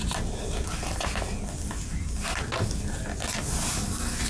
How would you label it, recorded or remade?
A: recorded